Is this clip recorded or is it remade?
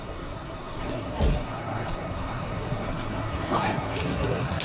remade